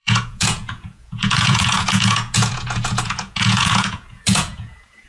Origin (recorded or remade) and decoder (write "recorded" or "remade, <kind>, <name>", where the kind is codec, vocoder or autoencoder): remade, vocoder, Vocos